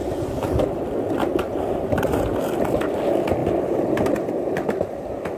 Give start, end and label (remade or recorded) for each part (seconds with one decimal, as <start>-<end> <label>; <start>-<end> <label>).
0.0-1.5 recorded; 1.5-2.0 remade; 2.0-5.4 recorded